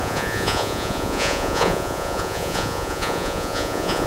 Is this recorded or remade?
remade